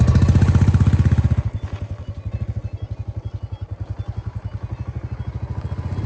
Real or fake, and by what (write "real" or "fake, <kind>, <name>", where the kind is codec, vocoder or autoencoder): real